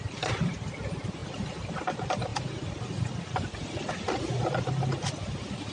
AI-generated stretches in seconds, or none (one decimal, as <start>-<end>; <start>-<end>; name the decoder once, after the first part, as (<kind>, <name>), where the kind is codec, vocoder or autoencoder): none